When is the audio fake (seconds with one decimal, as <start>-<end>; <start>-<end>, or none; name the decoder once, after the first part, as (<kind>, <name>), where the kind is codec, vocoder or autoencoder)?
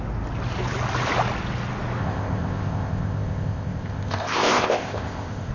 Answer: 2.0-5.5 (codec, ZipCodec)